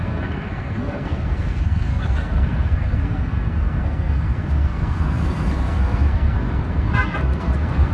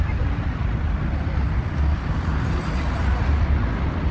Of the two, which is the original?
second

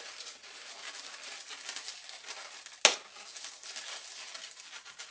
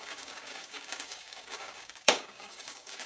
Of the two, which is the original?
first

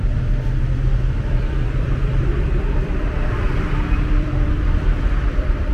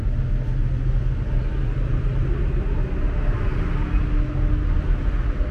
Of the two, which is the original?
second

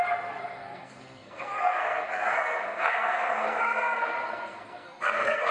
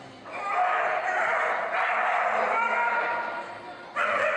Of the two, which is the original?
second